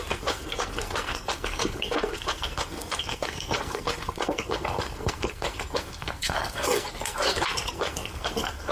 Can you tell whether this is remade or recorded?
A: remade